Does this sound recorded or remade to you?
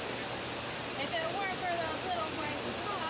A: recorded